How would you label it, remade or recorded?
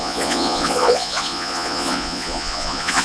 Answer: remade